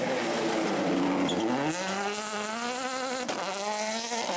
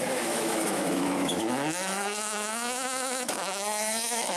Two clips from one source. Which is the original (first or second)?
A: first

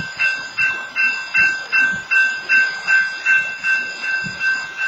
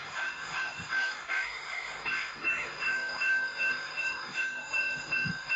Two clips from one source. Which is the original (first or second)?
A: first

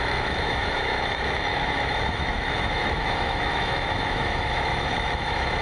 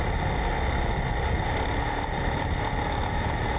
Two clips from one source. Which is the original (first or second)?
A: second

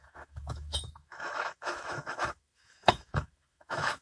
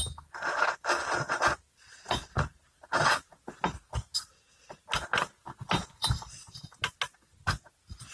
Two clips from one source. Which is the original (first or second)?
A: second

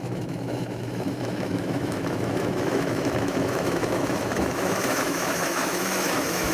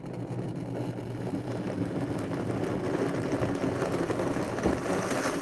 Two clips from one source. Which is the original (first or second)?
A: second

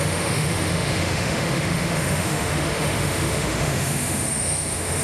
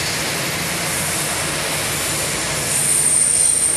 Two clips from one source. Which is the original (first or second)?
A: second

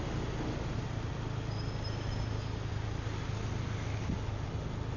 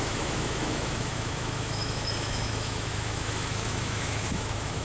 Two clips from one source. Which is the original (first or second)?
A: first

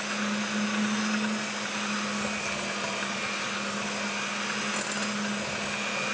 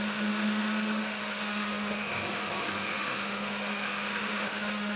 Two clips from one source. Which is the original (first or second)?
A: first